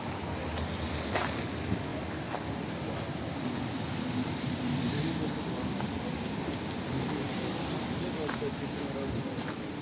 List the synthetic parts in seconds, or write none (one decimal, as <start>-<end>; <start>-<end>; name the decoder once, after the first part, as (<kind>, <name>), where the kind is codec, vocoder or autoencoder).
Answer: none